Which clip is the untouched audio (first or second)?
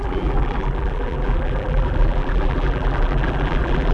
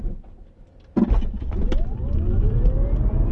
second